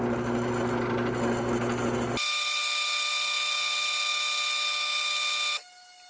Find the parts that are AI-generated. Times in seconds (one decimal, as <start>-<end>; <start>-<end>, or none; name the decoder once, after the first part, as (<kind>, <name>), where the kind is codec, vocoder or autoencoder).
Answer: none